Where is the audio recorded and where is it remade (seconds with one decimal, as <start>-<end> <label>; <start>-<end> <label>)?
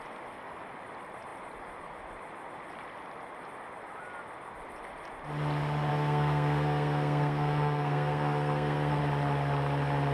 0.0-5.9 recorded; 5.9-9.0 remade; 9.0-10.1 recorded